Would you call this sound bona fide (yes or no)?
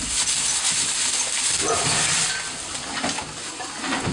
yes